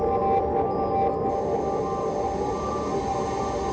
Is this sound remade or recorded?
recorded